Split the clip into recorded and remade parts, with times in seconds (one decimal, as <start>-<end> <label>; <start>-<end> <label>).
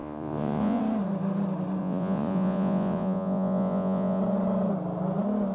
0.0-0.8 remade; 0.8-1.8 recorded; 1.8-4.2 remade; 4.2-5.5 recorded